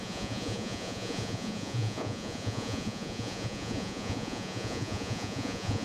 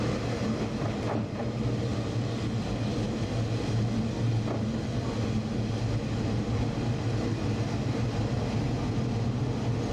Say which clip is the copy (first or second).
first